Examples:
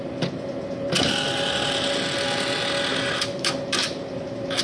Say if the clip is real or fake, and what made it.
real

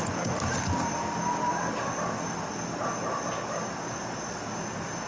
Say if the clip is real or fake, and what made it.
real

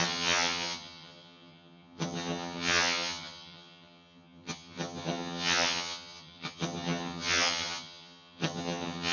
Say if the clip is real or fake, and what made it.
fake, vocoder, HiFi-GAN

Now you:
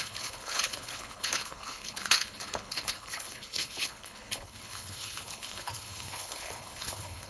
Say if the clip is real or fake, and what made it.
fake, codec, HILCodec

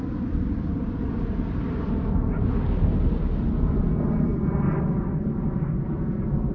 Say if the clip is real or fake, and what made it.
real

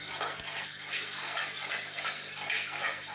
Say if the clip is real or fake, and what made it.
fake, codec, SNAC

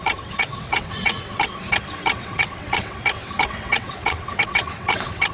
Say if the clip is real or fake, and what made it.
fake, vocoder, WaveNeXt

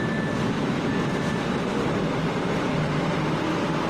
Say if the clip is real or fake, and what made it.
real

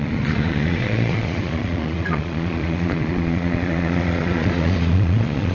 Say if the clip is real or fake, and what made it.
fake, vocoder, Vocos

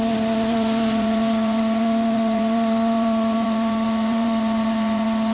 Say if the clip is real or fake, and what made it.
fake, vocoder, Vocos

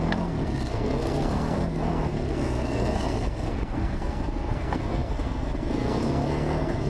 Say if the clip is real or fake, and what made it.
fake, codec, SNAC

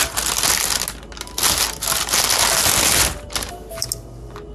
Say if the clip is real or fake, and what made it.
real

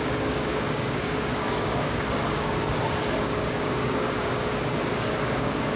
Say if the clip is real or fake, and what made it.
fake, codec, DAC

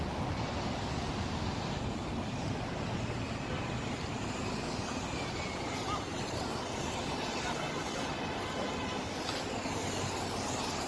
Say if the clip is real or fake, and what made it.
real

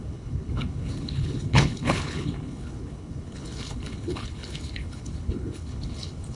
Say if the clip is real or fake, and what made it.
fake, codec, HILCodec